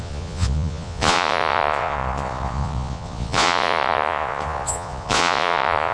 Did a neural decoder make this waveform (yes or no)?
yes